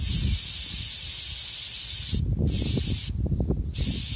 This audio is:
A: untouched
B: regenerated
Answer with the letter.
A